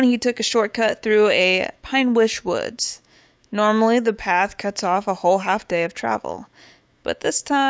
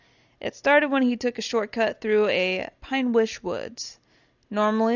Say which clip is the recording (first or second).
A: second